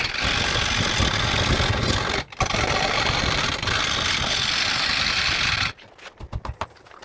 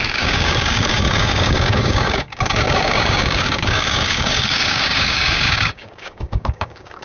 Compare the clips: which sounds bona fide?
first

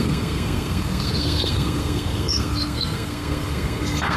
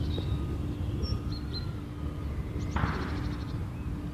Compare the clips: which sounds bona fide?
second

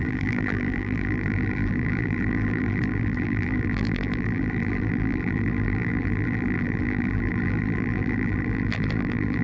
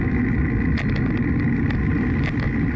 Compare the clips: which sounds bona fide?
second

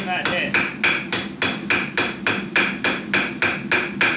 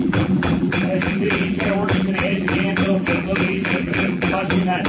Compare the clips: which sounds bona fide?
first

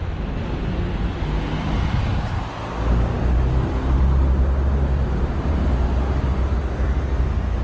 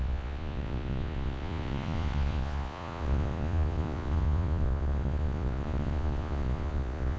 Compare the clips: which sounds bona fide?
first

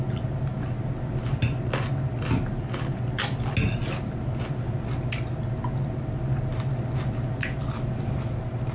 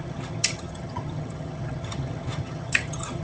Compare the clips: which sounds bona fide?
first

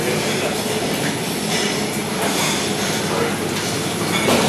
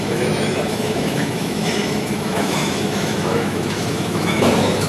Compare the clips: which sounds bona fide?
first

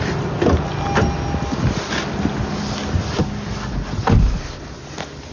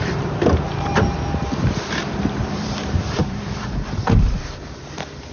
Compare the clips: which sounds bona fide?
first